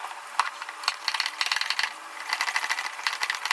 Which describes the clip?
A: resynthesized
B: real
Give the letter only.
B